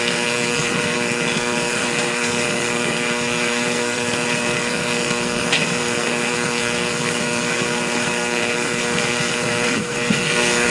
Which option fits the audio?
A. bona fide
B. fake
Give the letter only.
B